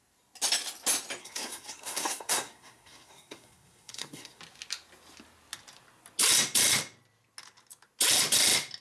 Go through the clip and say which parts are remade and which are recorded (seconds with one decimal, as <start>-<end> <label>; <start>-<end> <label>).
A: 0.0-1.2 recorded; 1.2-4.4 remade; 4.4-8.8 recorded